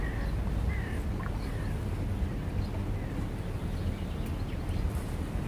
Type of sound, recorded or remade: recorded